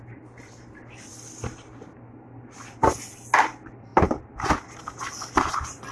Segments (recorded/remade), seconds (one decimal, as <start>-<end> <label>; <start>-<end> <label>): 0.0-5.9 recorded